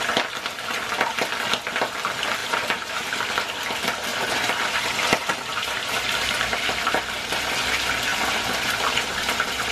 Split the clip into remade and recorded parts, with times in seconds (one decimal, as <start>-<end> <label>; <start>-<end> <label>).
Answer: 0.0-2.4 recorded; 2.4-3.2 remade; 3.2-4.1 recorded; 4.1-4.8 remade; 4.8-5.5 recorded; 5.5-6.3 remade; 6.3-8.1 recorded; 8.1-8.8 remade; 8.8-9.7 recorded